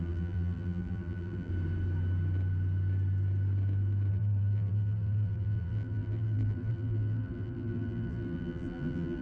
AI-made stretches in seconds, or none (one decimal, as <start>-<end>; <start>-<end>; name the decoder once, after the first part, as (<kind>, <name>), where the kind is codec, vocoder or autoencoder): 0.0-1.5 (vocoder, BigVGAN v2); 4.1-9.2